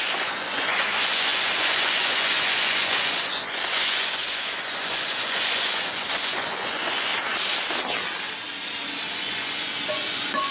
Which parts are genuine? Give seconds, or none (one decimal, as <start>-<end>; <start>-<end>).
7.1-9.1